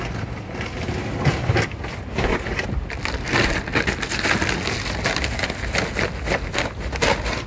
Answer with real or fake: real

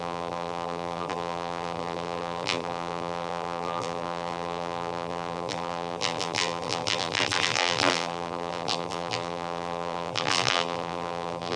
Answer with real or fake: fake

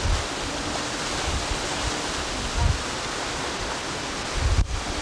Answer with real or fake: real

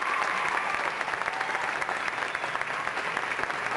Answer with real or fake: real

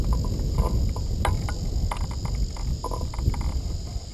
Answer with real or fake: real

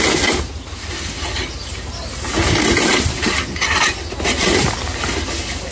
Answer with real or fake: real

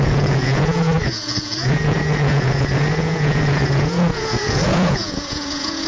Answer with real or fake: fake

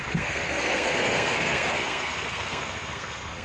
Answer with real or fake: fake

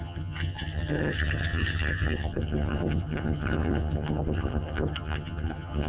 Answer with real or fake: fake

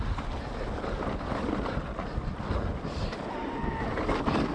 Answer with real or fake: real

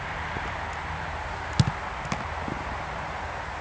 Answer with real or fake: real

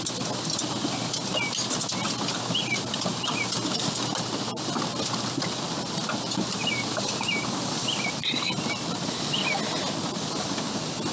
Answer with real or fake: real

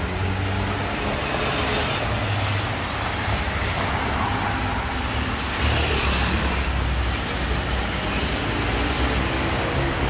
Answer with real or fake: real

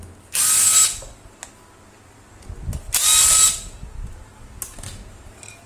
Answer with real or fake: real